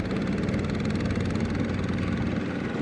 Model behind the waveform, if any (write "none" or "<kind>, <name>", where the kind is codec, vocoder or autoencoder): none